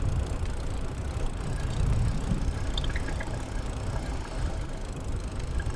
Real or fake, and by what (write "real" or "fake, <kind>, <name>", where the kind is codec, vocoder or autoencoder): real